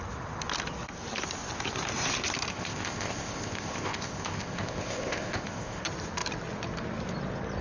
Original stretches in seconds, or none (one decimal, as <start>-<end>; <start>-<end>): 0.0-2.5; 5.8-7.6